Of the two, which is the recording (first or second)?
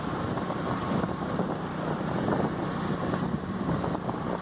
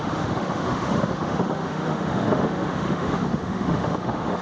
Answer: first